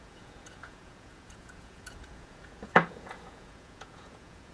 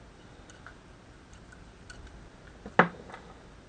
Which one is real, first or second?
second